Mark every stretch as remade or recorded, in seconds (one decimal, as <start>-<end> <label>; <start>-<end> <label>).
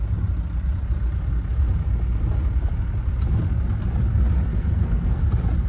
0.0-4.5 recorded; 4.5-5.2 remade; 5.2-5.7 recorded